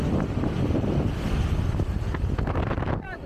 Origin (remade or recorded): recorded